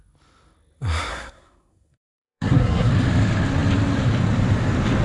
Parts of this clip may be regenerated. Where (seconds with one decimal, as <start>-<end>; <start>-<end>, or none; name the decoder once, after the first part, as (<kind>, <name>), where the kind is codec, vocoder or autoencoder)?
1.1-2.9 (codec, SNAC)